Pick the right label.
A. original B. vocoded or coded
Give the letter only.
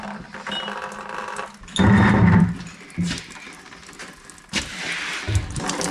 A